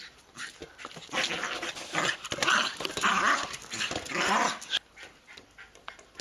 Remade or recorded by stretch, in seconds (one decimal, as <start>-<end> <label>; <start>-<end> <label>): 0.0-6.2 recorded